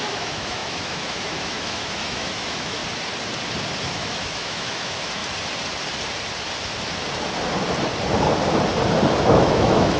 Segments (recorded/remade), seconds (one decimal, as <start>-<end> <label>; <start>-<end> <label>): 0.0-2.8 remade; 2.8-3.8 recorded; 3.8-5.2 remade; 5.2-9.2 recorded; 9.2-10.0 remade